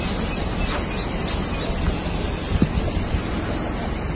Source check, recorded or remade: recorded